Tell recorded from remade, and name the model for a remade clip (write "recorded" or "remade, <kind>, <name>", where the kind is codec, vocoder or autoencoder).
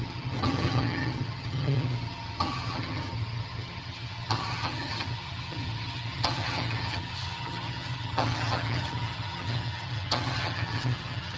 remade, vocoder, HiFi-GAN